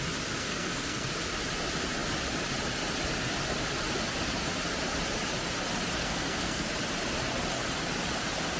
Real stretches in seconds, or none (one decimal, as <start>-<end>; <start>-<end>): 0.0-0.4; 1.1-6.0; 6.7-8.6